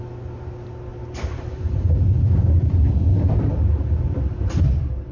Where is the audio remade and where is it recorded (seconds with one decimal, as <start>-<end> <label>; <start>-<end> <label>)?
0.0-0.9 recorded; 0.9-1.7 remade; 1.7-5.1 recorded

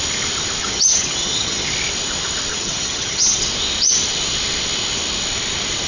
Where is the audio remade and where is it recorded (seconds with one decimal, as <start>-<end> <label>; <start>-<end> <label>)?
0.0-0.6 recorded; 0.6-1.7 remade; 1.7-2.5 recorded; 2.5-3.4 remade; 3.4-5.9 recorded

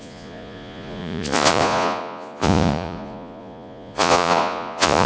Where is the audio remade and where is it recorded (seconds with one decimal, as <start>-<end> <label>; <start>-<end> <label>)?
0.0-5.1 remade

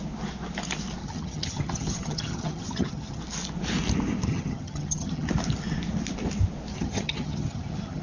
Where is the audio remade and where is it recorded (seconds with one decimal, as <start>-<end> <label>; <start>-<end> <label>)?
0.0-1.0 recorded; 1.0-3.2 remade; 3.2-4.3 recorded; 4.3-5.3 remade; 5.3-6.7 recorded; 6.7-8.0 remade

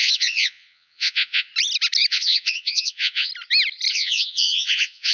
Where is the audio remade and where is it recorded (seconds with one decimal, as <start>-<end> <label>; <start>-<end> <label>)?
0.0-1.5 remade; 1.5-2.1 recorded; 2.1-3.3 remade; 3.3-3.9 recorded; 3.9-5.1 remade

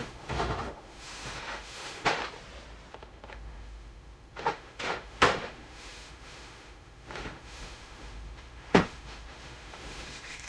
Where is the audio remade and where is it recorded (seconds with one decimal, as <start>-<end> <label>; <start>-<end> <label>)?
0.0-2.2 remade; 2.2-2.9 recorded; 2.9-10.5 remade

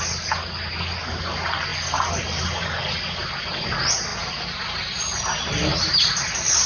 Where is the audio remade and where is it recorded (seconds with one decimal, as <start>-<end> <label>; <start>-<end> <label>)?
0.0-6.7 recorded